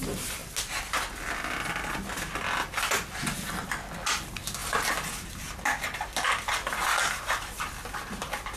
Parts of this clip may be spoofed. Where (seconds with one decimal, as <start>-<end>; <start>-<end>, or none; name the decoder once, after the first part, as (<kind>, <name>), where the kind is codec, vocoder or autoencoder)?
none